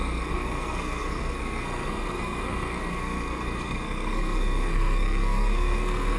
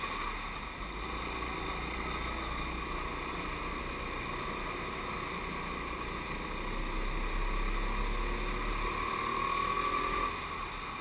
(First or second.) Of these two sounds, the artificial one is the first